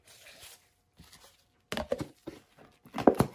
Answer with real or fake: real